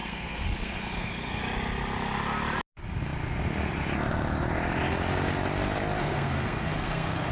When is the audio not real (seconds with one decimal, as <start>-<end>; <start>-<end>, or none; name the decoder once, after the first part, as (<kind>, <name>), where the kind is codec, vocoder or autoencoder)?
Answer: 0.0-1.4 (codec, SNAC); 6.0-7.3